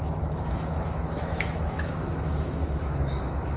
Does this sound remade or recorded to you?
remade